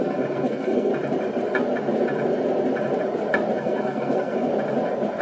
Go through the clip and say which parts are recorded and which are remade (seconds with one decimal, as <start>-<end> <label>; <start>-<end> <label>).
0.0-0.9 remade; 0.9-3.6 recorded; 3.6-4.5 remade; 4.5-5.2 recorded